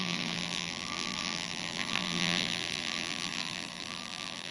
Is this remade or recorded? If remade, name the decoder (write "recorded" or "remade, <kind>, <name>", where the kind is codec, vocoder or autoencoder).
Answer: remade, vocoder, BigVGAN v2